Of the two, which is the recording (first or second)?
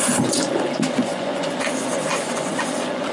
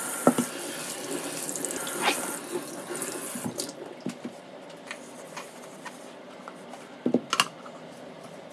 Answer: second